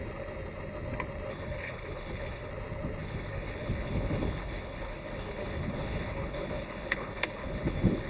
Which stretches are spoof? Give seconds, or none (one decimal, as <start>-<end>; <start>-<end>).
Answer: 1.3-2.5; 3.0-8.1